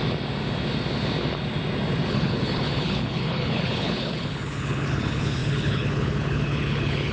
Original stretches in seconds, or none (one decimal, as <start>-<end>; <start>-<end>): 0.0-2.1